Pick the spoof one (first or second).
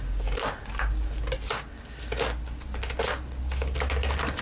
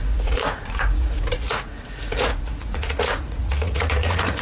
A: second